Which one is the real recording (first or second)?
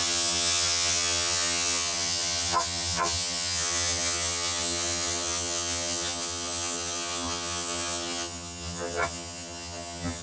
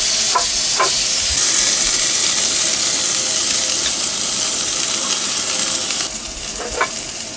second